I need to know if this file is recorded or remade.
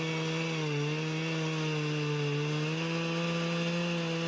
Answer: recorded